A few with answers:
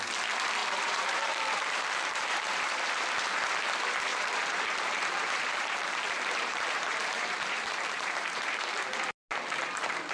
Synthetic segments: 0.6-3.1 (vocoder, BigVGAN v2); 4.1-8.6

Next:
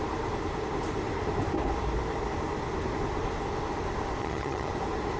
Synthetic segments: 4.2-4.7 (vocoder, HiFi-GAN)

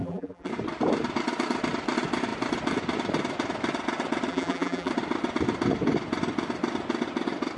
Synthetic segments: 0.0-0.5 (vocoder, BigVGAN v2); 4.3-4.9

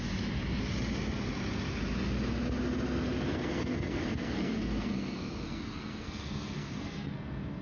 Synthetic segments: 3.3-7.6 (codec, SNAC)

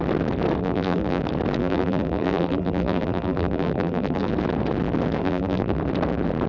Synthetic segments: 0.6-1.2 (vocoder, BigVGAN v2); 1.6-4.3; 5.2-5.8